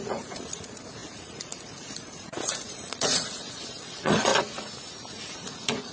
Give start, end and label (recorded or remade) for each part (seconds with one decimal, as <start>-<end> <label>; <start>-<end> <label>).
0.0-4.3 remade; 4.3-5.2 recorded; 5.2-5.9 remade